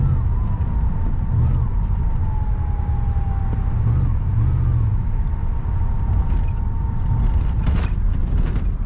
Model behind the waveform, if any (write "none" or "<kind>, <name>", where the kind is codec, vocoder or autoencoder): none